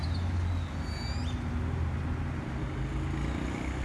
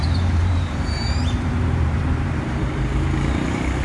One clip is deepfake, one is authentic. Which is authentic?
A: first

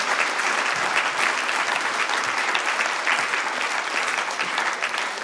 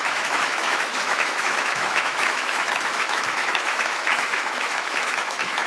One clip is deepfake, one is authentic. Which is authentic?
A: first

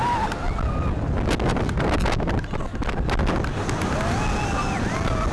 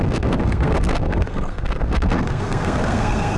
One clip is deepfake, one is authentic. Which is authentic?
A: first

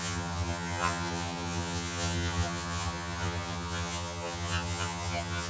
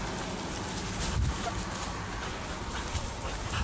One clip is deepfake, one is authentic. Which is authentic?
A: second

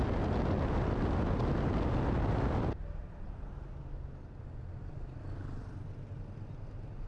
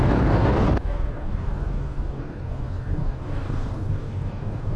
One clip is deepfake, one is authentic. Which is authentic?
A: first